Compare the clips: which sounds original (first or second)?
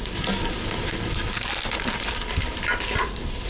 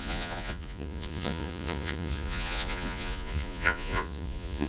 first